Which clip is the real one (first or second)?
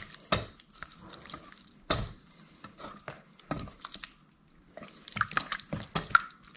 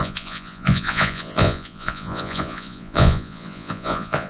first